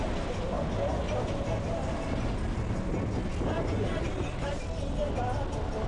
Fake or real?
real